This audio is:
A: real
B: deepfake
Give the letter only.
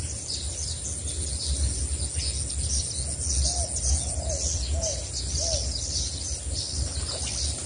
A